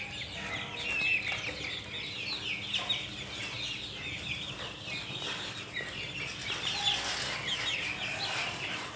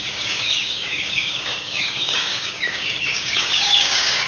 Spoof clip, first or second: second